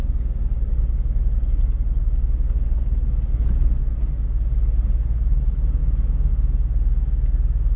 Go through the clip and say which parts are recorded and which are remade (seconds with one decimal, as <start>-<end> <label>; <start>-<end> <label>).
0.0-7.8 recorded